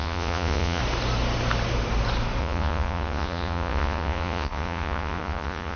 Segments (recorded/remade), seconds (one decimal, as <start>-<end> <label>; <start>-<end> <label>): 0.0-0.8 remade; 0.8-2.4 recorded; 2.4-5.8 remade